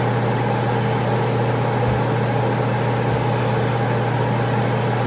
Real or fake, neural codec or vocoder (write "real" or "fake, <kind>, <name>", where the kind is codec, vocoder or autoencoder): real